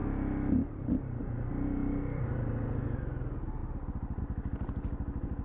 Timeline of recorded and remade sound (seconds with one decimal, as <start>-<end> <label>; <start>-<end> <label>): 0.0-1.8 recorded; 1.8-2.4 remade; 2.4-5.4 recorded